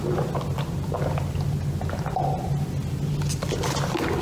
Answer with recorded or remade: recorded